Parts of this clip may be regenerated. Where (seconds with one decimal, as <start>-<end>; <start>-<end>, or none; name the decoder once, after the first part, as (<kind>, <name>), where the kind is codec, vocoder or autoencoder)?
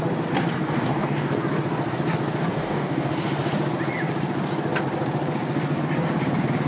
0.6-1.3 (codec, DAC); 2.5-3.1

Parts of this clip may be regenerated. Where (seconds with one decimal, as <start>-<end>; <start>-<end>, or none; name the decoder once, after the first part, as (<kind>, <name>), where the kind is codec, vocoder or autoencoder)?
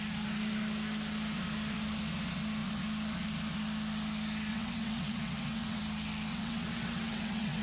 4.5-5.8 (vocoder, WaveNeXt); 6.3-7.6